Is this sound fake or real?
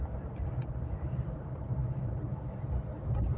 real